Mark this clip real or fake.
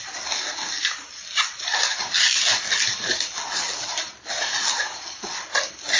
real